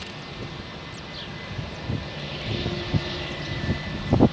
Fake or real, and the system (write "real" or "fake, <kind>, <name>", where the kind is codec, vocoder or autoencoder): real